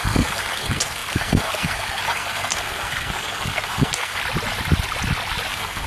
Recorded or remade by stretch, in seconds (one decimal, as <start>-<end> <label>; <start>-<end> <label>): 0.0-4.2 remade; 4.2-5.5 recorded; 5.5-5.9 remade